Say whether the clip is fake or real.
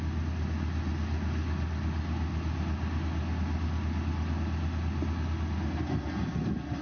real